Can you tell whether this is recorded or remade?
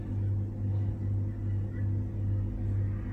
recorded